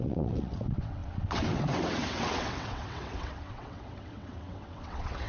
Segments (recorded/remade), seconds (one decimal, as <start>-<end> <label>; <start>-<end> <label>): 0.0-5.3 remade